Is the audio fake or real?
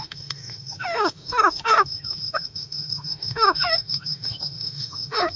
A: fake